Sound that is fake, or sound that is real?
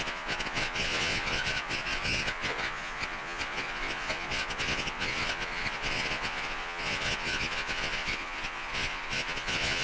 fake